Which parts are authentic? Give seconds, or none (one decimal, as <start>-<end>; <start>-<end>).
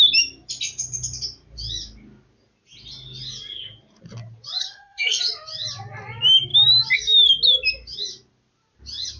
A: 0.0-4.6; 5.2-9.2